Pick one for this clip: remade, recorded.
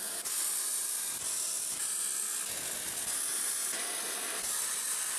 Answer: recorded